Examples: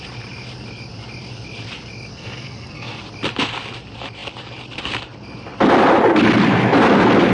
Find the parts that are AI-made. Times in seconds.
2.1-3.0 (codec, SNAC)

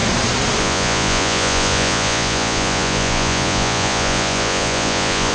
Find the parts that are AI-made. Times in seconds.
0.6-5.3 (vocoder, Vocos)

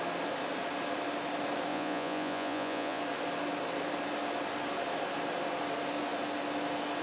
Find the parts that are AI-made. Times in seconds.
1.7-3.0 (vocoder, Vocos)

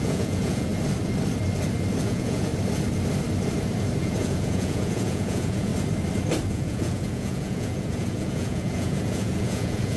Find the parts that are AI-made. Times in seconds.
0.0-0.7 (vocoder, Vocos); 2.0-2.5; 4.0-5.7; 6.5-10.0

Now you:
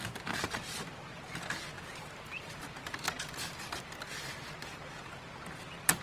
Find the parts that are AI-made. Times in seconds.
none

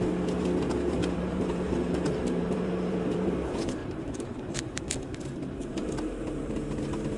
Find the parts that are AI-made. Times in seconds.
1.0-3.3 (vocoder, BigVGAN v2); 3.8-4.9